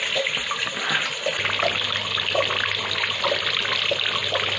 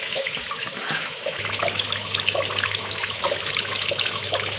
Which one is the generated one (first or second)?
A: second